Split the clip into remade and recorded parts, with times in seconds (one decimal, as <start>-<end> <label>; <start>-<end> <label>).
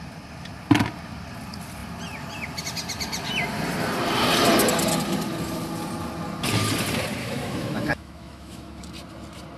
0.0-7.2 recorded; 7.2-8.8 remade; 8.8-9.6 recorded